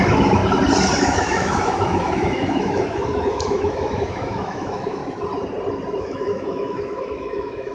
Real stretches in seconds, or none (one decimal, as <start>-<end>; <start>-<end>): 0.4-1.0; 5.0-6.0